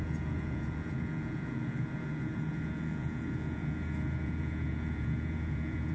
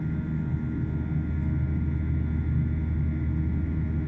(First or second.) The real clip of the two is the second